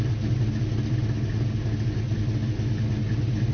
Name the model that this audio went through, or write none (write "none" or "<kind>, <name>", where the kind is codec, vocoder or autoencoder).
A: none